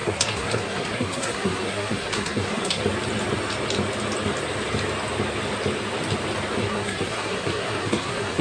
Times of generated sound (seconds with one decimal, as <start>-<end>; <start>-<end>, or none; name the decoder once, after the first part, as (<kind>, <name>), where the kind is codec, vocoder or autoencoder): 0.0-2.8 (codec, SNAC); 6.6-8.4